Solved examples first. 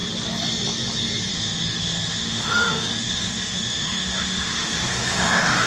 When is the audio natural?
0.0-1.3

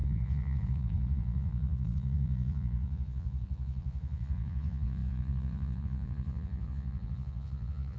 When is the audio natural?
none